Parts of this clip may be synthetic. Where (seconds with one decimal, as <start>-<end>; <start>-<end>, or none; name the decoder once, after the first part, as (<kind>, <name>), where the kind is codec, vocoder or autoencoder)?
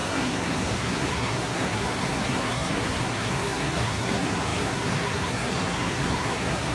0.0-6.7 (codec, SNAC)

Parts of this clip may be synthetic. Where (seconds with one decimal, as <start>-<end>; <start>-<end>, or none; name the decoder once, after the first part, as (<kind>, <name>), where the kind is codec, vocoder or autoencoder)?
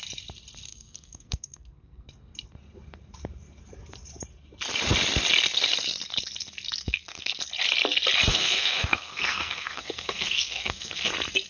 0.7-2.1 (codec, SNAC); 6.8-7.4; 8.3-11.1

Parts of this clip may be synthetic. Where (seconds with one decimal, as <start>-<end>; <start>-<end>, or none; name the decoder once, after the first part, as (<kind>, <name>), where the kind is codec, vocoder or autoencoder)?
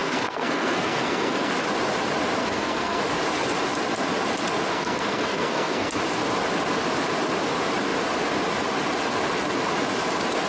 0.0-1.5 (codec, SNAC); 2.4-3.0; 4.7-6.0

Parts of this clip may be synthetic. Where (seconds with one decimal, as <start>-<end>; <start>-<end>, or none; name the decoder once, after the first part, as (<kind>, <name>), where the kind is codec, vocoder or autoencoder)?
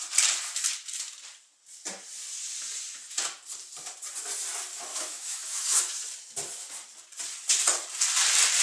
4.9-5.9 (autoencoder, DAC-VAE)